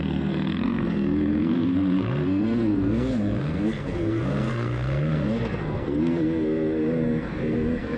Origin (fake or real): fake